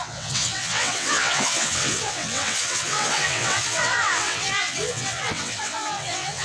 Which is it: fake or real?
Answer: fake